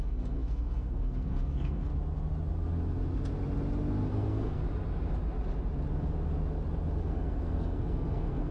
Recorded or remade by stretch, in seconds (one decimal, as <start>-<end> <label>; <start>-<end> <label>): 0.0-1.9 remade; 1.9-4.1 recorded; 4.1-4.6 remade; 4.6-7.0 recorded; 7.0-8.5 remade